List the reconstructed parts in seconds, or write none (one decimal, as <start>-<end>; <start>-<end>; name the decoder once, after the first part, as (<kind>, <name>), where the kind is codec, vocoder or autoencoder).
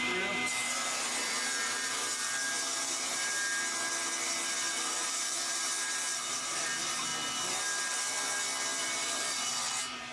0.0-4.1 (vocoder, BigVGAN v2); 4.7-7.1; 8.8-10.1